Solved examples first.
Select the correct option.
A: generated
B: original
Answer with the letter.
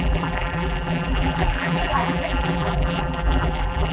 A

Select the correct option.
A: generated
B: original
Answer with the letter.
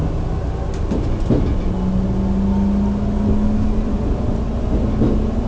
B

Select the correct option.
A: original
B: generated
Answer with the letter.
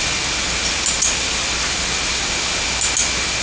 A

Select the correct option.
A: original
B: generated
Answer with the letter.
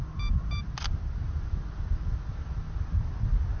A